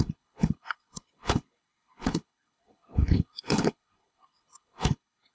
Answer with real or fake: fake